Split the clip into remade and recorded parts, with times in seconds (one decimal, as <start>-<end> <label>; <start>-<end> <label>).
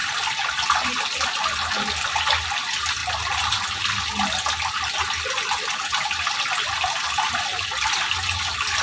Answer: 0.0-8.8 recorded